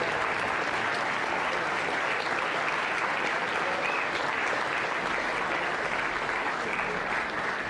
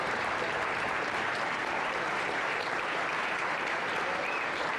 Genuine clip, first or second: first